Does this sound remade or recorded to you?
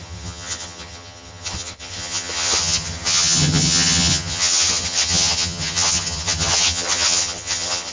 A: remade